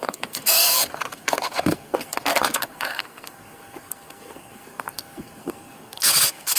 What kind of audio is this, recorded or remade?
remade